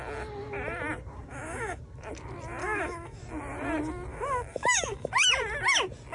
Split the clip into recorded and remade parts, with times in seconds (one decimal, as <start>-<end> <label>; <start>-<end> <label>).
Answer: 0.0-1.3 recorded; 1.3-1.8 remade; 1.8-2.6 recorded; 2.6-3.2 remade; 3.2-4.1 recorded; 4.1-5.1 remade; 5.1-6.1 recorded

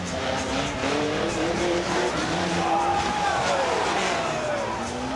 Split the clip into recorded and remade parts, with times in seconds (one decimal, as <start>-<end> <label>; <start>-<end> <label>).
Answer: 0.0-0.8 recorded; 0.8-3.9 remade; 3.9-5.2 recorded

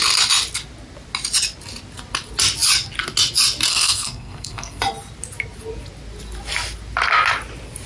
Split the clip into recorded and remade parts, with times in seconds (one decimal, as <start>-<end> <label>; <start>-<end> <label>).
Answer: 0.0-3.7 recorded; 3.7-4.8 remade; 4.8-7.9 recorded

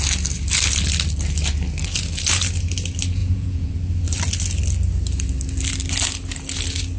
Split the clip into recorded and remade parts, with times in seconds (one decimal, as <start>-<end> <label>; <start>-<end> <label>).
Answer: 0.0-3.2 recorded; 3.2-3.7 remade; 3.7-7.0 recorded

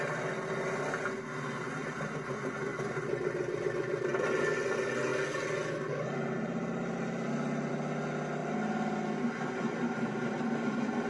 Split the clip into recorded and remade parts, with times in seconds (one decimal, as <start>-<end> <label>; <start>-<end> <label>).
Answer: 0.0-11.1 recorded

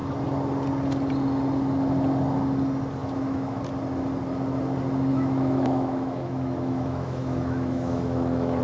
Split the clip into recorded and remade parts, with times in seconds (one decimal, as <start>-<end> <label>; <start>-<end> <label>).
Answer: 0.0-3.0 recorded; 3.0-3.6 remade; 3.6-5.1 recorded; 5.1-8.6 remade

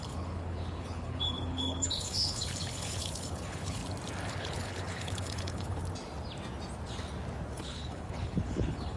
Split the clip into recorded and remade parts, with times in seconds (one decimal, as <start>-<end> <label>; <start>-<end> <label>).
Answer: 0.0-3.8 remade; 3.8-4.3 recorded; 4.3-5.8 remade; 5.8-7.5 recorded; 7.5-9.0 remade